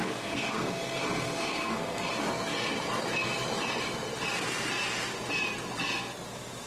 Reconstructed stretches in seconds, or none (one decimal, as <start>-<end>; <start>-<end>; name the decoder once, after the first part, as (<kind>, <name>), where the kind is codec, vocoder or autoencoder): 0.0-2.1 (codec, SNAC)